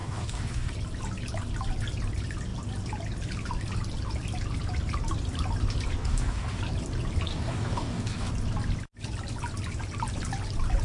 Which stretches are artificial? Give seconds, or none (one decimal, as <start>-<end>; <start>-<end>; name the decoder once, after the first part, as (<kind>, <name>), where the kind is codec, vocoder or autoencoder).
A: 0.0-0.7 (codec, DAC); 6.0-6.6; 7.3-8.3